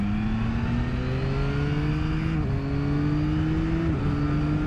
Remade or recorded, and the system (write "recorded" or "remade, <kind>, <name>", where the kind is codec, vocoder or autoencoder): recorded